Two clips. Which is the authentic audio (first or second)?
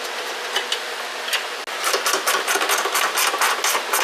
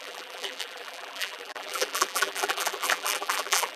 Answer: first